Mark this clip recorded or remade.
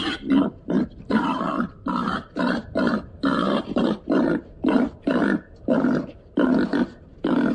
remade